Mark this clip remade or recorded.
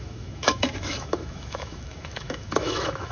remade